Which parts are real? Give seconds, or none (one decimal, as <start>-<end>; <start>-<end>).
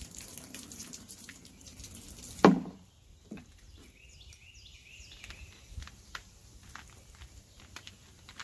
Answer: 1.7-5.7; 6.4-7.4